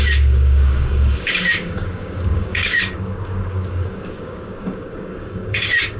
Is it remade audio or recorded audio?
remade